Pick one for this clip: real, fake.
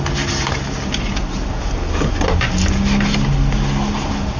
real